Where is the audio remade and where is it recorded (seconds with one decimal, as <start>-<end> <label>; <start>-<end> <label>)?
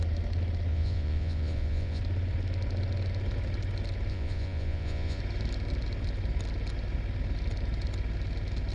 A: 0.0-0.7 recorded; 0.7-2.0 remade; 2.0-4.1 recorded; 4.1-5.2 remade; 5.2-8.7 recorded